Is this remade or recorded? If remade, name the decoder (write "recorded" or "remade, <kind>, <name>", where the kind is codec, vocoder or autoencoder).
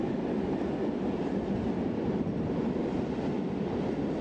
recorded